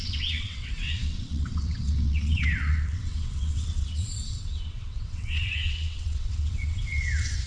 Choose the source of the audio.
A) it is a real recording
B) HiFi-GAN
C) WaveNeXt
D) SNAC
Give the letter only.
C